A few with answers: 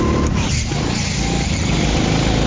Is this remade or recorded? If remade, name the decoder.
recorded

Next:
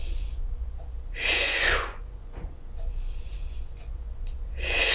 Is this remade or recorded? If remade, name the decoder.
remade, vocoder, Vocos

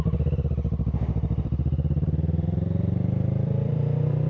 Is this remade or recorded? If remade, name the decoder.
remade, vocoder, BigVGAN v2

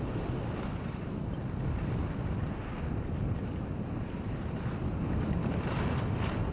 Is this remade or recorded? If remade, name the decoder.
recorded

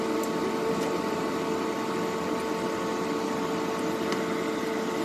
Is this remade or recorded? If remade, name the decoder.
recorded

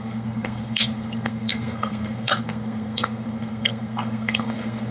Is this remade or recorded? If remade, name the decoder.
remade, codec, SNAC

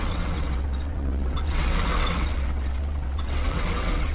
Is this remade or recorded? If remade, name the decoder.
remade, vocoder, WaveNeXt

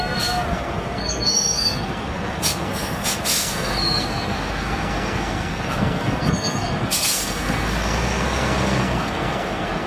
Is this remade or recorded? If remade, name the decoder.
remade, codec, SNAC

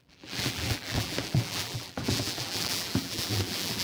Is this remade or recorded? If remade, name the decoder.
remade, vocoder, BigVGAN v2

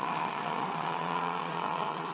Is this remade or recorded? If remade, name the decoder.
remade, vocoder, Vocos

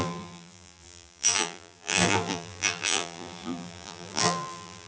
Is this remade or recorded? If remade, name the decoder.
remade, vocoder, BigVGAN v2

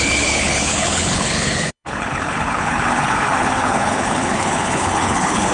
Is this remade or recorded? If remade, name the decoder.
remade, codec, HILCodec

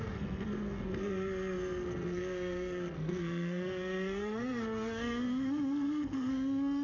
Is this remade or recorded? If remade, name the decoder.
remade, codec, SNAC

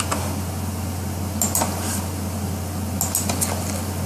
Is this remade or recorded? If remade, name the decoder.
recorded